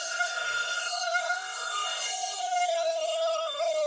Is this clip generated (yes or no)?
yes